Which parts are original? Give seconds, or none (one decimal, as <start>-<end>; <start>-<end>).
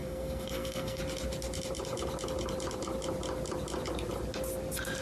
1.0-5.0